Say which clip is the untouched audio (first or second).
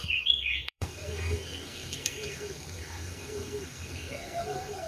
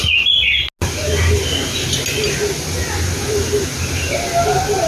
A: second